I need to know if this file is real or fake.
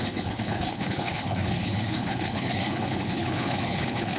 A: fake